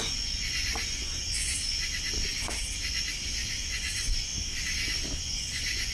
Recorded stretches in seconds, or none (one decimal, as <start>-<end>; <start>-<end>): 1.9-3.5; 4.3-5.2